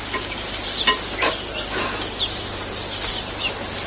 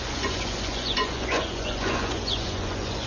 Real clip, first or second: first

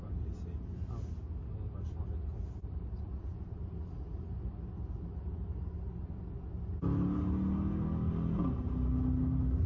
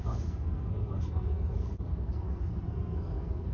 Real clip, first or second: first